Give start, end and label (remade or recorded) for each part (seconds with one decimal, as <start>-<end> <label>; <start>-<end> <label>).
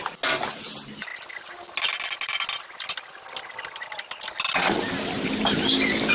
0.0-6.1 recorded